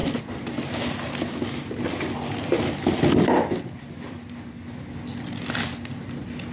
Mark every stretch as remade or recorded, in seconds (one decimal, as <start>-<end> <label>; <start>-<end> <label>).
0.0-6.5 recorded